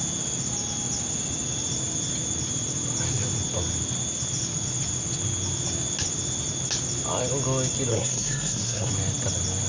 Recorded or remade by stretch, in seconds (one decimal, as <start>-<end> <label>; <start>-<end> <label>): 0.0-7.9 recorded; 7.9-8.9 remade; 8.9-9.7 recorded